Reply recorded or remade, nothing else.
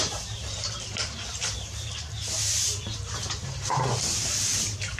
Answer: remade